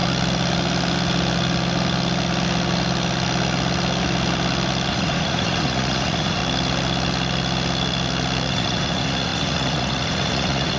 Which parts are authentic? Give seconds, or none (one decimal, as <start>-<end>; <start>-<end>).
0.0-4.9; 6.4-8.5